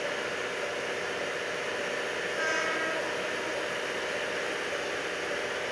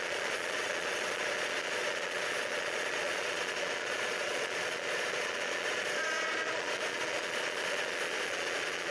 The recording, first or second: first